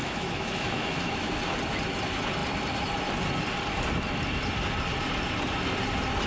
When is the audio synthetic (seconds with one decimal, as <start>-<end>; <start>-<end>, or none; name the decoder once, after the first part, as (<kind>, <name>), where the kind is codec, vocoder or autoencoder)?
0.0-1.4 (autoencoder, DAC-VAE)